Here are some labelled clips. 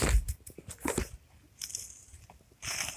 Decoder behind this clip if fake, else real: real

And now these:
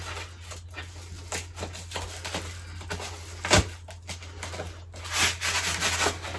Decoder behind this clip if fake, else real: real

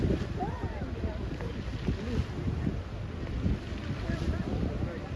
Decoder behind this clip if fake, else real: real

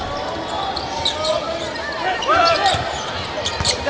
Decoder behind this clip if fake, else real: real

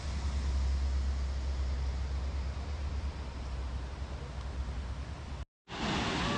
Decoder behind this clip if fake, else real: real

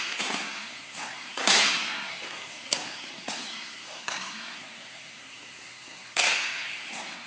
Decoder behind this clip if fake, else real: fake, codec, SNAC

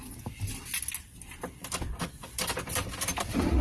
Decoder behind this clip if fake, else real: real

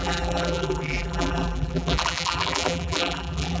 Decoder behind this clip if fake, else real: fake, vocoder, BigVGAN v2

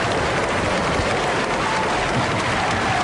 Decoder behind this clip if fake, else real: real